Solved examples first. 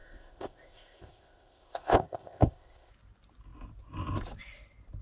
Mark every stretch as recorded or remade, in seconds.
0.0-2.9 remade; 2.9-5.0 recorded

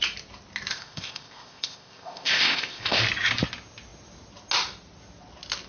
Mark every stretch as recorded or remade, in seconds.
0.0-0.7 recorded; 0.7-3.0 remade; 3.0-5.7 recorded

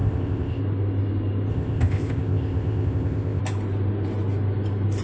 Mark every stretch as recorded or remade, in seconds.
0.0-0.6 remade; 0.6-1.5 recorded; 1.5-3.4 remade; 3.4-5.0 recorded

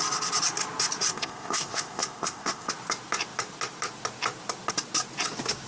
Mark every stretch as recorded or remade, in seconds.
0.0-1.1 recorded; 1.1-2.7 remade; 2.7-5.7 recorded

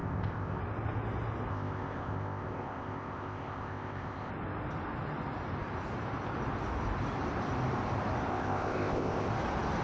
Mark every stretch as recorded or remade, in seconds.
0.0-0.6 remade; 0.6-1.5 recorded; 1.5-4.3 remade; 4.3-8.3 recorded; 8.3-9.3 remade; 9.3-9.8 recorded

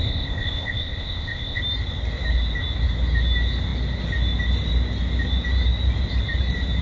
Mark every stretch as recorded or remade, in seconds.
0.0-1.6 remade; 1.6-6.8 recorded

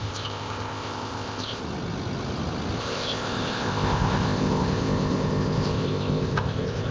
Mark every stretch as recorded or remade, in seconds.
0.0-1.6 remade; 1.6-2.8 recorded; 2.8-6.9 remade